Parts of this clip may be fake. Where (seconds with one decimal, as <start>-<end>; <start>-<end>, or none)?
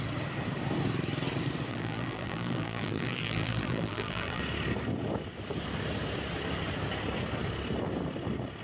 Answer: 1.7-4.4